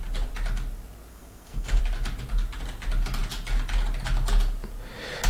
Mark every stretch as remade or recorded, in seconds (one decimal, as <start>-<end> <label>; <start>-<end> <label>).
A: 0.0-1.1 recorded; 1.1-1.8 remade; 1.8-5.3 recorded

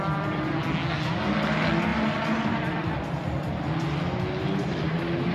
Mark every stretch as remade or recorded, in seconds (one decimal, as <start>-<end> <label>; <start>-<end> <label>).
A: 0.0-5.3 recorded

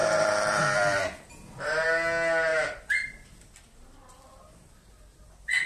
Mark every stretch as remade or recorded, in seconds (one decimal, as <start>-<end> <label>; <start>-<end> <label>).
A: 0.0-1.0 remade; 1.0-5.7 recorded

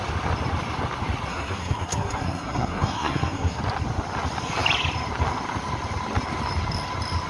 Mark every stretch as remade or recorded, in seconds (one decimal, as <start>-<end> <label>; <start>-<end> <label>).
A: 0.0-1.3 recorded; 1.3-3.6 remade; 3.6-7.3 recorded

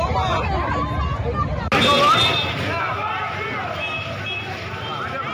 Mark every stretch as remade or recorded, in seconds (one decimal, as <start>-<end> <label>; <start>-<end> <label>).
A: 0.0-5.3 recorded

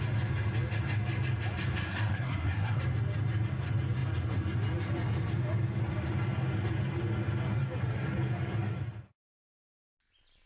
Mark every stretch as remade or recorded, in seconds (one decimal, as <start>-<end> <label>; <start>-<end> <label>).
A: 0.0-1.8 recorded; 1.8-2.8 remade; 2.8-10.5 recorded

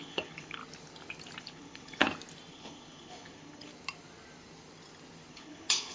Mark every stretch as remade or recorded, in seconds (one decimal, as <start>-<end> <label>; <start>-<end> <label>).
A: 0.0-0.6 remade; 0.6-1.4 recorded; 1.4-2.0 remade; 2.0-2.5 recorded; 2.5-3.7 remade; 3.7-5.3 recorded; 5.3-5.9 remade